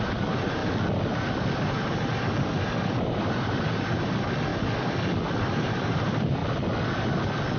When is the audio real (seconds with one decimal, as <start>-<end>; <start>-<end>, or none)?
0.6-1.7; 4.5-5.4; 6.4-7.6